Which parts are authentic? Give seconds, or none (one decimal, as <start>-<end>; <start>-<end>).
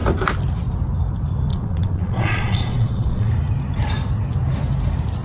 0.0-1.5; 3.3-5.2